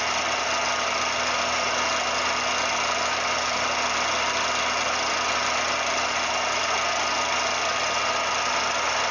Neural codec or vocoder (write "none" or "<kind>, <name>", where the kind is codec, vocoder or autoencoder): none